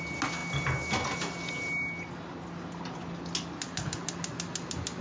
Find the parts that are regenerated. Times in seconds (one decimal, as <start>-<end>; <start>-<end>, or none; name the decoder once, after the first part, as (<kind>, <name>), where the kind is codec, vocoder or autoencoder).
none